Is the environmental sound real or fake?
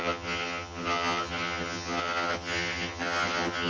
fake